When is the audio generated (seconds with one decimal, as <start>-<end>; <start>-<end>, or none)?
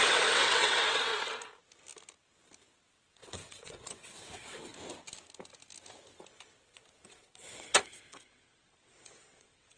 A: 0.0-1.1; 2.9-4.7; 6.6-9.8